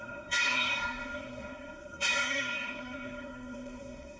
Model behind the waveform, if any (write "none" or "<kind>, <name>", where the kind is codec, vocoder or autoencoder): codec, SNAC